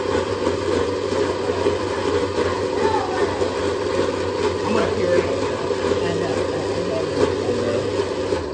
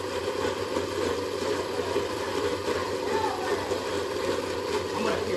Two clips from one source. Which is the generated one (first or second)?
second